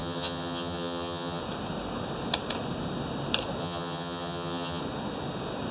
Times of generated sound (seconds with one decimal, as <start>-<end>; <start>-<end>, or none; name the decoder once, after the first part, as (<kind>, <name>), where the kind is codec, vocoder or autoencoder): 0.0-1.4 (vocoder, HiFi-GAN); 3.6-4.8